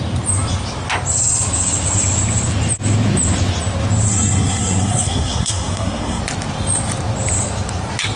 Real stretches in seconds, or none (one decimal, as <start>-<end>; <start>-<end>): 0.0-4.1; 6.2-8.2